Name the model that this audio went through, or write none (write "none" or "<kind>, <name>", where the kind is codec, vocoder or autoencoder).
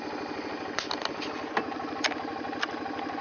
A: none